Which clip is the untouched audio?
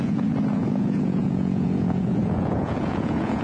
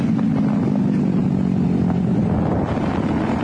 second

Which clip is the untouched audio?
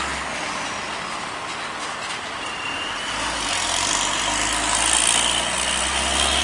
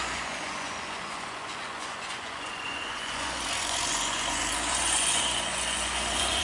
first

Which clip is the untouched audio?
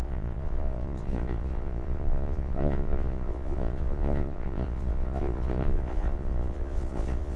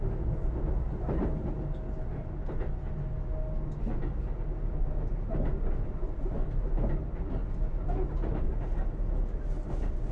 second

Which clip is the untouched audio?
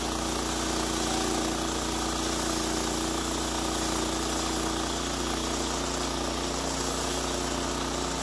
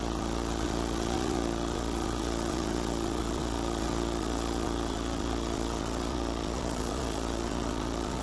first